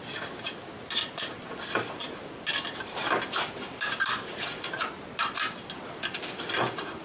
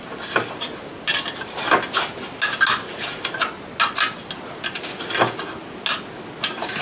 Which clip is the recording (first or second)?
second